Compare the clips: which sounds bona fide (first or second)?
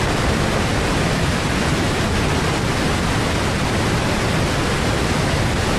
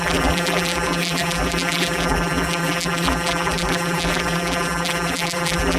first